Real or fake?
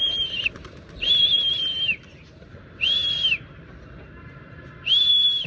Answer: fake